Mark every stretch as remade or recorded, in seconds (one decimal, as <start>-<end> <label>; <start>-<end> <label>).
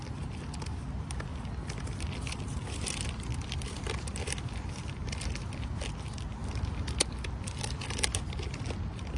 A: 0.0-1.3 remade; 1.3-2.0 recorded; 2.0-9.2 remade